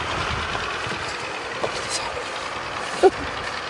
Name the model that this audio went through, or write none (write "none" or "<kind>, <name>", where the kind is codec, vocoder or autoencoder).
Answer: none